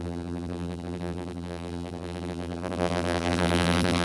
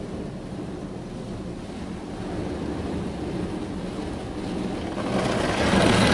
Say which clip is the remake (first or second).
first